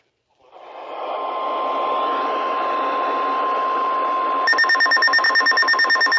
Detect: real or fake real